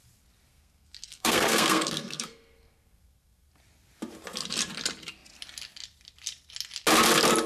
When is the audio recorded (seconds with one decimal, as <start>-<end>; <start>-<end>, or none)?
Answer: 0.0-0.5; 3.5-7.5